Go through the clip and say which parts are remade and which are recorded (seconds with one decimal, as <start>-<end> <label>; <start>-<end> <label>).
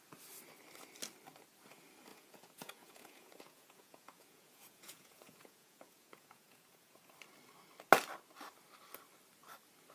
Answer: 0.0-2.1 recorded; 2.1-7.1 remade; 7.1-9.9 recorded